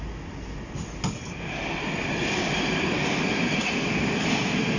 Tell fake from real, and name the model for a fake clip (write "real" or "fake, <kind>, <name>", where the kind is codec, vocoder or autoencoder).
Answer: real